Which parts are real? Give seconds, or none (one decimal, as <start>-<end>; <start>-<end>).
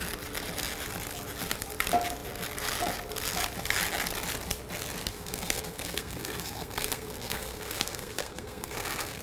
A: 0.0-5.1